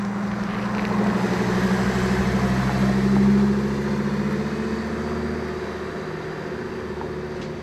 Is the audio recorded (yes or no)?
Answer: yes